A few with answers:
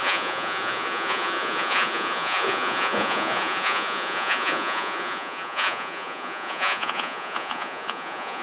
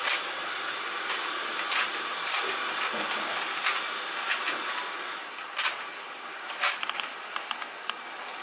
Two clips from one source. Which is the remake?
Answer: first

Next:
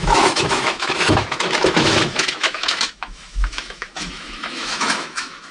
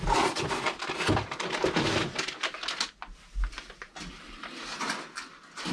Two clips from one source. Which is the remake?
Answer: first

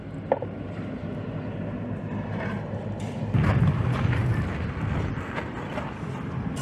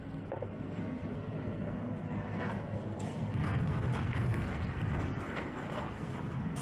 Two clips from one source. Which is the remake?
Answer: second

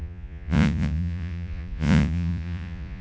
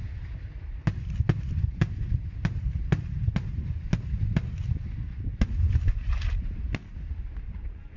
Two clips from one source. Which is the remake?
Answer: first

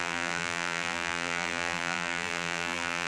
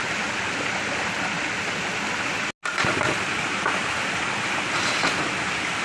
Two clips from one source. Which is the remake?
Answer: first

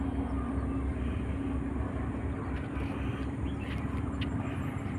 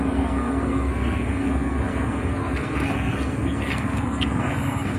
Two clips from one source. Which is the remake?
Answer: second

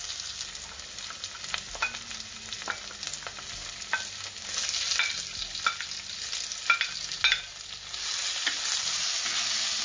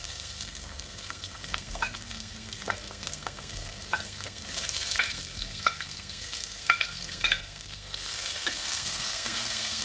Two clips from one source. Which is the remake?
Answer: second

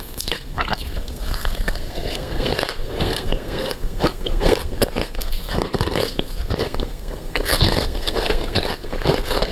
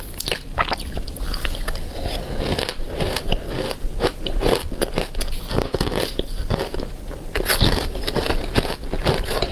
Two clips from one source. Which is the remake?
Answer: first